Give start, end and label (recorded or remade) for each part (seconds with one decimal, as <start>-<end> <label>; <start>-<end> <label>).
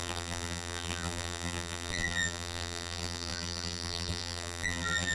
0.0-5.1 remade